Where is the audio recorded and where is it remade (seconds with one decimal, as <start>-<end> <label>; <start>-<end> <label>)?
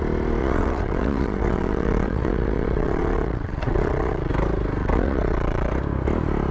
0.0-0.4 recorded; 0.4-4.3 remade; 4.3-4.8 recorded; 4.8-5.7 remade; 5.7-6.5 recorded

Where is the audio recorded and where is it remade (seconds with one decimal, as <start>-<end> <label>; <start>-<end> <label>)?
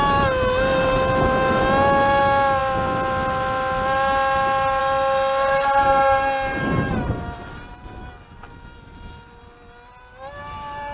0.0-10.9 recorded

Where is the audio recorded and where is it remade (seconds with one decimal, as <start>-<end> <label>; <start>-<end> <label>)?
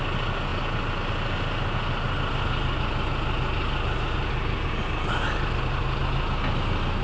0.0-7.0 recorded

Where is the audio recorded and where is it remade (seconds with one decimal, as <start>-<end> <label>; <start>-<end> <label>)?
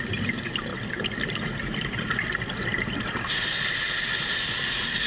0.0-5.1 recorded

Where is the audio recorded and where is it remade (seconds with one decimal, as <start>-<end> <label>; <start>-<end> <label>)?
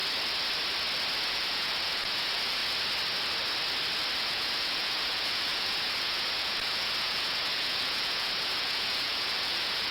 0.0-1.3 recorded; 1.3-2.6 remade; 2.6-4.2 recorded; 4.2-9.9 remade